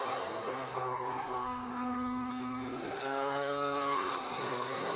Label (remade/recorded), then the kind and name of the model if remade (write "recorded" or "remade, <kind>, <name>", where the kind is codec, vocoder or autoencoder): remade, codec, SNAC